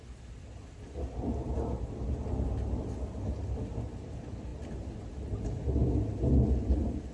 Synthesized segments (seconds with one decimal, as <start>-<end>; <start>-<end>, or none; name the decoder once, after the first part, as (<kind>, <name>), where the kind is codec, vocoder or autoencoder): none